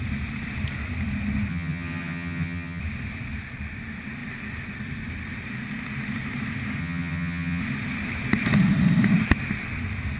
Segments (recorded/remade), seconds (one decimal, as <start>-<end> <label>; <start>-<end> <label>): 0.0-1.5 recorded; 1.5-2.8 remade; 2.8-6.8 recorded; 6.8-7.6 remade; 7.6-10.2 recorded

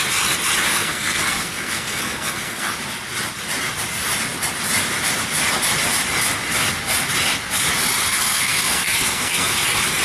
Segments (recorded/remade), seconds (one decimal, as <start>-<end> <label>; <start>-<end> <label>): 0.0-0.7 recorded; 0.7-2.7 remade; 2.7-8.1 recorded; 8.1-9.6 remade; 9.6-10.0 recorded

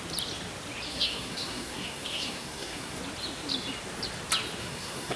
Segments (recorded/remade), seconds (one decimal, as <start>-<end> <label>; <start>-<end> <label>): 0.0-0.9 recorded; 0.9-3.0 remade; 3.0-4.6 recorded; 4.6-5.2 remade

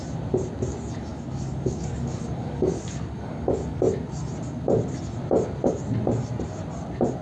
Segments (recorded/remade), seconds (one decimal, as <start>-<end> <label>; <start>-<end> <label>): 0.0-1.1 recorded; 1.1-3.8 remade; 3.8-7.2 recorded

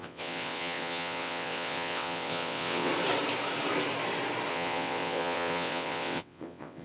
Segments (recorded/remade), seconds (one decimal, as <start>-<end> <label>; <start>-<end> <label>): 0.0-2.9 remade; 2.9-4.5 recorded; 4.5-6.8 remade

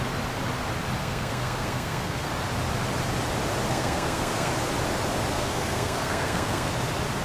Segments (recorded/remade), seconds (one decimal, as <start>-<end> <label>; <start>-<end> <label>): 0.0-1.0 recorded; 1.0-2.3 remade; 2.3-3.7 recorded; 3.7-4.5 remade; 4.5-5.3 recorded; 5.3-6.7 remade; 6.7-7.2 recorded

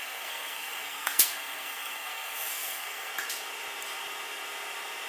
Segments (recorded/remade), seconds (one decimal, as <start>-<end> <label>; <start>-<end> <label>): 0.0-3.1 remade; 3.1-5.1 recorded

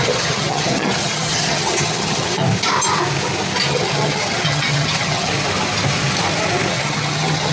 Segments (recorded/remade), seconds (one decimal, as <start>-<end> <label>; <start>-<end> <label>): 0.0-2.4 remade; 2.4-3.7 recorded; 3.7-5.3 remade; 5.3-6.7 recorded; 6.7-7.5 remade